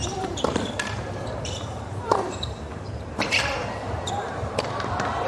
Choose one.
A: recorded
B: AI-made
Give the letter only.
B